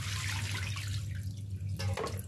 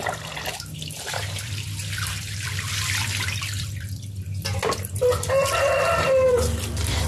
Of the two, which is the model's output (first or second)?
second